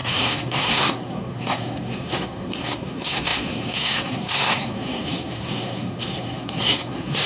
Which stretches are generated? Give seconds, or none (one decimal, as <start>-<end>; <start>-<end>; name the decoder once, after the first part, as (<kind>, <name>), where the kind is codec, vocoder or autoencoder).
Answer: 0.0-7.3 (codec, SNAC)